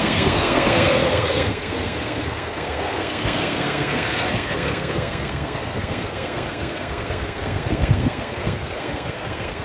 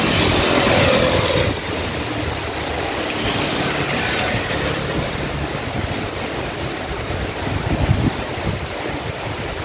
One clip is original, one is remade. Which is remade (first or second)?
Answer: first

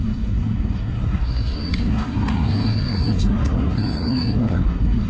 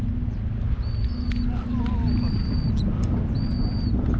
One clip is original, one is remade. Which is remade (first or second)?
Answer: first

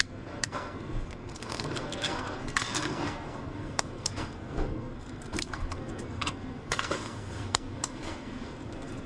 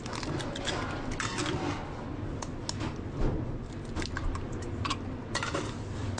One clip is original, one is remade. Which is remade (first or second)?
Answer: first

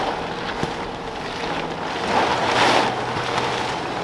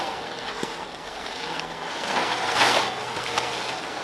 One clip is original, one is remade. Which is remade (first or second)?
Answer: second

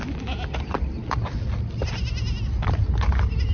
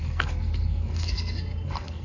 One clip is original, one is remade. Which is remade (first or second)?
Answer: second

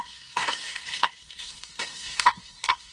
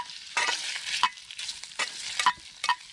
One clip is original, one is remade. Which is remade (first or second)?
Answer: first